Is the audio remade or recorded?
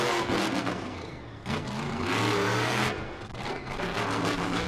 remade